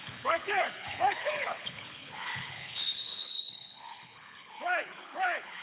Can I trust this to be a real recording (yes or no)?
no